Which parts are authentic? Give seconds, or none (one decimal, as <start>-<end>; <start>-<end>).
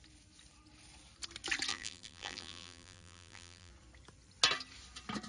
0.0-1.7; 3.7-5.3